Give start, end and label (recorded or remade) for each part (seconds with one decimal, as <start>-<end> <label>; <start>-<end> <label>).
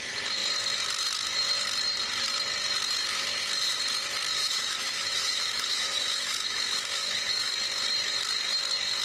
0.0-4.4 recorded; 4.4-7.5 remade; 7.5-9.0 recorded